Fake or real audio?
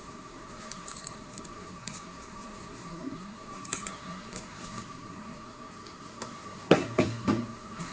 fake